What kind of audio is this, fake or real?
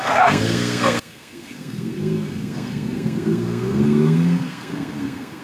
fake